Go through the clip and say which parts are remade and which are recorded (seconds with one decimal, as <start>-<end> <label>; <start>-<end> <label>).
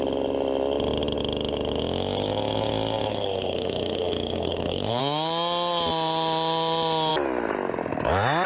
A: 0.0-3.1 recorded; 3.1-5.0 remade; 5.0-8.5 recorded